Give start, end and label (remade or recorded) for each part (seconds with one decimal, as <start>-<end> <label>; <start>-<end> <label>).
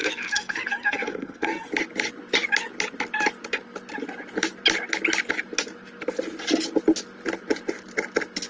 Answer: 0.0-1.7 remade; 1.7-8.5 recorded